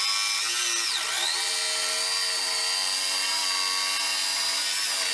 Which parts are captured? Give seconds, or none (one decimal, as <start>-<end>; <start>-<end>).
0.0-5.1